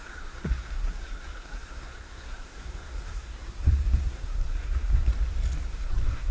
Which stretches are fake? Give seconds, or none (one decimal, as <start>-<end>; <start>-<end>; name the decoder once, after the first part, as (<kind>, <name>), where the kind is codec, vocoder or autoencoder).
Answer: 0.0-5.1 (codec, SNAC); 5.7-6.3